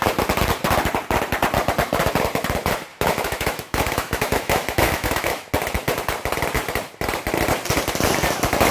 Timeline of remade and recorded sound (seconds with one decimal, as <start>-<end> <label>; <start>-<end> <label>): 0.0-2.9 recorded; 2.9-5.5 remade; 5.5-8.7 recorded

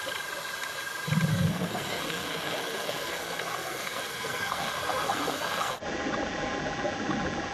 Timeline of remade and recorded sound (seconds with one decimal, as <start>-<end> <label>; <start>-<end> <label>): 0.0-1.3 recorded; 1.3-5.8 remade; 5.8-7.5 recorded

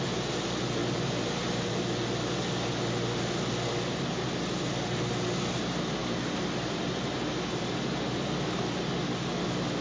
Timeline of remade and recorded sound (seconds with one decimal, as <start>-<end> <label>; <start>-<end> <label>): 0.0-6.0 recorded; 6.0-6.8 remade; 6.8-9.8 recorded

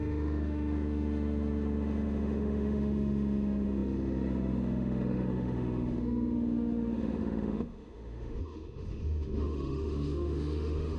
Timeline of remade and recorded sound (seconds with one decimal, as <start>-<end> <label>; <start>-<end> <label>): 0.0-11.0 remade